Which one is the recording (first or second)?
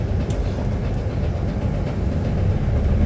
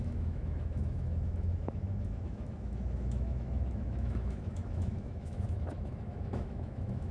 first